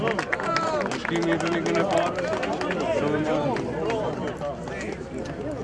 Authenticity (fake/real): real